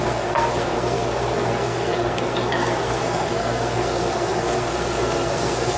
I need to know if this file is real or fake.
fake